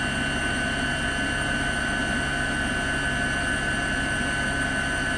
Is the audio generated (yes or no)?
no